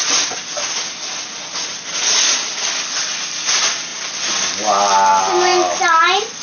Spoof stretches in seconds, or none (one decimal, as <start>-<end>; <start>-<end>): none